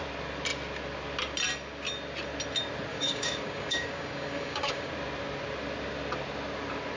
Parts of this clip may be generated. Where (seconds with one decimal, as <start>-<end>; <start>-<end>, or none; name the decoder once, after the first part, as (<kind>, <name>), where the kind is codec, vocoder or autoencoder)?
2.9-4.9 (codec, DAC)